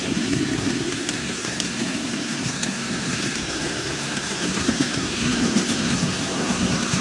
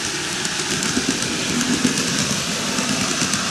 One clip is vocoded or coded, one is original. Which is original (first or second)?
second